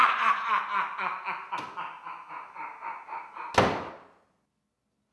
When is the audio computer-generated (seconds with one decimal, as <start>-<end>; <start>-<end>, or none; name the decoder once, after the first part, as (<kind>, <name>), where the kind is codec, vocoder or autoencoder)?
0.0-0.6 (vocoder, Vocos)